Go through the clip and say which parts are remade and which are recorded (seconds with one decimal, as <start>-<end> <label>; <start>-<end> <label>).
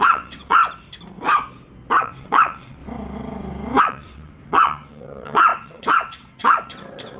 0.0-0.6 remade; 0.6-2.0 recorded; 2.0-2.8 remade; 2.8-3.8 recorded; 3.8-7.2 remade